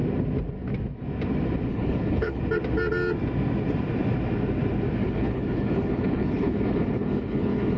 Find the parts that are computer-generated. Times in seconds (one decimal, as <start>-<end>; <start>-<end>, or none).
1.7-2.4; 5.0-7.8